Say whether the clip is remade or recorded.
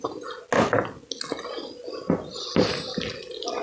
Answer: recorded